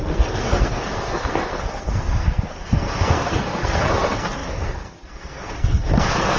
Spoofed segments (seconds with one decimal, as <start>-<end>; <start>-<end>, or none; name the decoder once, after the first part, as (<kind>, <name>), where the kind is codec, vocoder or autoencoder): 0.0-6.4 (codec, SNAC)